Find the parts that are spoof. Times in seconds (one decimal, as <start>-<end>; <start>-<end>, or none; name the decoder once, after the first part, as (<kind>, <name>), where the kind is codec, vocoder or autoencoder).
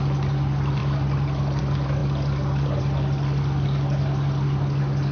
none